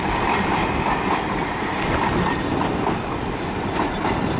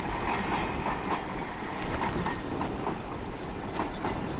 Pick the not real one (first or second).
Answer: first